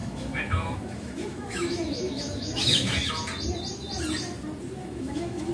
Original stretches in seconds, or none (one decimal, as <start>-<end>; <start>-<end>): 3.1-4.8